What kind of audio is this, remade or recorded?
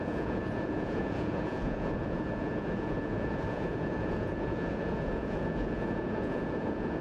remade